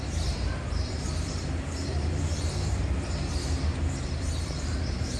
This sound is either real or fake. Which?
fake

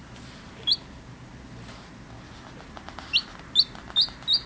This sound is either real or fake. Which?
real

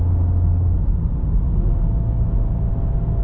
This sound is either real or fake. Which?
real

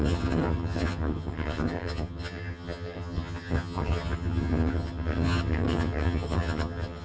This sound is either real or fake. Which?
fake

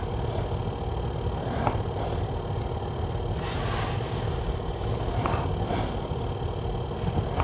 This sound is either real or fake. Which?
real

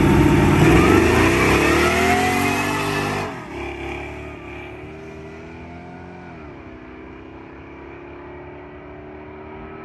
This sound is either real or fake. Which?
real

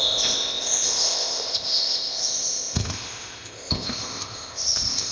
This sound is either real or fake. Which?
fake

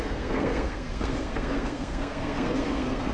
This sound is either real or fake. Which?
fake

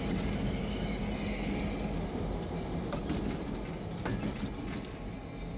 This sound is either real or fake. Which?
real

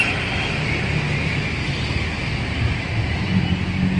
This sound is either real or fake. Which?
real